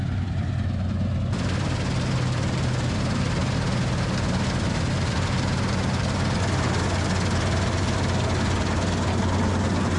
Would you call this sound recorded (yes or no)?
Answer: yes